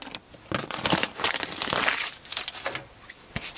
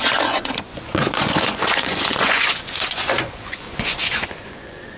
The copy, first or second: second